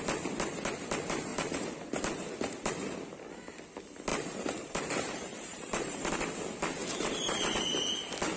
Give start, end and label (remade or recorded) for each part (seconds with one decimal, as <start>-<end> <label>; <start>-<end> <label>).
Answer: 0.0-1.3 recorded; 1.3-2.7 remade; 2.7-4.1 recorded; 4.1-6.1 remade; 6.1-6.8 recorded; 6.8-7.4 remade; 7.4-8.4 recorded